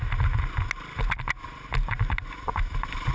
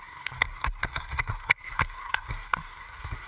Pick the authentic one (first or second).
first